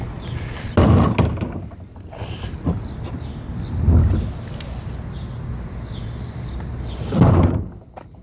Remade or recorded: recorded